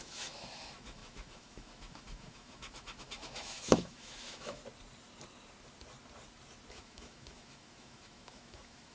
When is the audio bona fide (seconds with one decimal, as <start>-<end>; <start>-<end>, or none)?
4.6-6.7